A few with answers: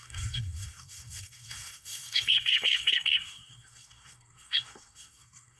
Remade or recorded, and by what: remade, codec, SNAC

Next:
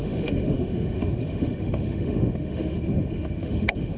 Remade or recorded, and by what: remade, autoencoder, DAC-VAE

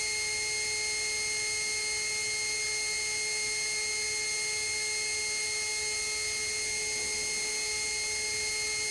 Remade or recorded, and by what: recorded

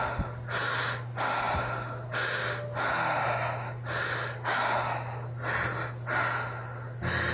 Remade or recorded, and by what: recorded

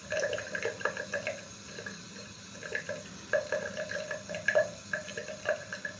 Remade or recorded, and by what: recorded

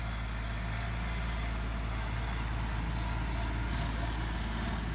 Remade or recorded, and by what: recorded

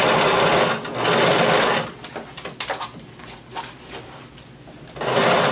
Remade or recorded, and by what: recorded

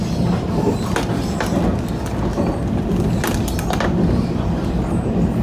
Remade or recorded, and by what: recorded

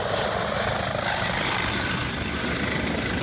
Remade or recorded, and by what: recorded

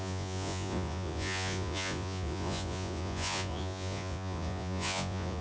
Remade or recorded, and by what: remade, vocoder, Vocos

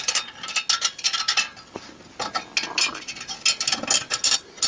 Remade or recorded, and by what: recorded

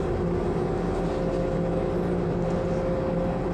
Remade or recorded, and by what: recorded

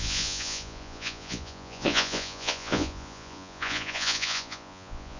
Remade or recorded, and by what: remade, vocoder, Vocos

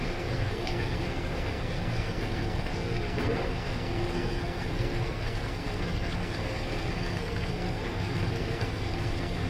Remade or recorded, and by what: remade, codec, SNAC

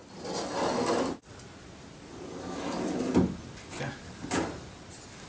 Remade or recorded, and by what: recorded